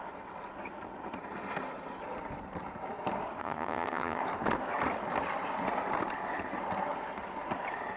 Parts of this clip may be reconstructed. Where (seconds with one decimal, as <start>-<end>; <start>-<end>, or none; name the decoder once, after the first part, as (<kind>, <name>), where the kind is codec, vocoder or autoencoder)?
3.4-4.2 (vocoder, HiFi-GAN)

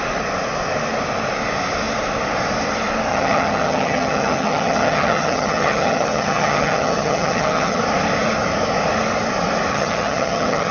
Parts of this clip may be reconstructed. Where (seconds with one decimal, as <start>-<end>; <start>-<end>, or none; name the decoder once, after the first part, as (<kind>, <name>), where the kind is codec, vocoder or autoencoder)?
3.1-7.8 (vocoder, HiFi-GAN); 9.7-10.7

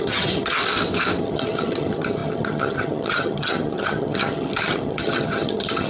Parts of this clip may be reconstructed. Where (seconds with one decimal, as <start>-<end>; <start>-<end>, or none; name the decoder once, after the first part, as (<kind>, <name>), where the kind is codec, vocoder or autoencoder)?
0.0-0.6 (vocoder, HiFi-GAN); 1.2-5.9

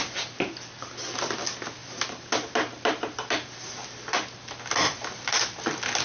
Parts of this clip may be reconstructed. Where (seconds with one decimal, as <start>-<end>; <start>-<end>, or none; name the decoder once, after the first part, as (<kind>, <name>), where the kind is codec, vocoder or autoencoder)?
none

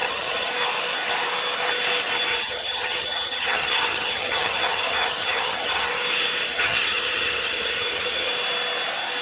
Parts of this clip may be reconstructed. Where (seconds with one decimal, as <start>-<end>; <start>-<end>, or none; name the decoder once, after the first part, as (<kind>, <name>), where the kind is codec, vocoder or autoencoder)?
0.0-0.5 (vocoder, HiFi-GAN); 2.3-5.9; 6.5-8.3

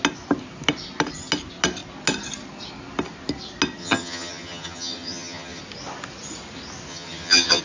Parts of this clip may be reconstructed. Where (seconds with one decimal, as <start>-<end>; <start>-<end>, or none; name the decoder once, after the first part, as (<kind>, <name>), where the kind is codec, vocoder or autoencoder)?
3.8-5.6 (vocoder, HiFi-GAN); 6.9-7.6

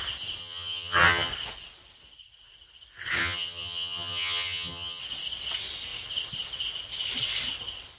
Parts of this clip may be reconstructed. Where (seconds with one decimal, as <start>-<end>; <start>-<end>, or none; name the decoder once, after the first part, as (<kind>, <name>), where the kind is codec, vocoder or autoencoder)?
0.4-1.3 (vocoder, HiFi-GAN); 3.2-5.0